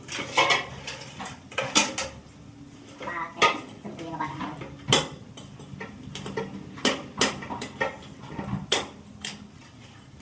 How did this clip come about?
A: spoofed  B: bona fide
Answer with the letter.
B